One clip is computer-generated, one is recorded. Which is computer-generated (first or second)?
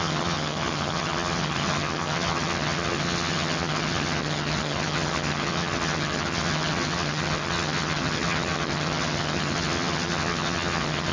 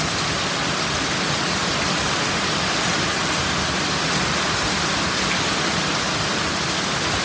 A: first